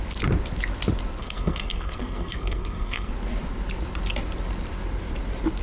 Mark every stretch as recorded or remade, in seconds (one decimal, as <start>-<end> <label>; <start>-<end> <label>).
0.0-1.2 recorded; 1.2-3.1 remade; 3.1-5.6 recorded